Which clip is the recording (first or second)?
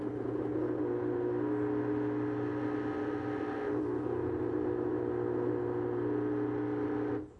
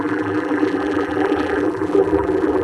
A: first